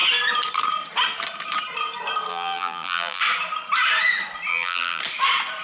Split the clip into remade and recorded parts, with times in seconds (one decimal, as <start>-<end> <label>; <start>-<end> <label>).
0.0-2.3 recorded; 2.3-3.2 remade; 3.2-4.5 recorded; 4.5-5.0 remade; 5.0-5.6 recorded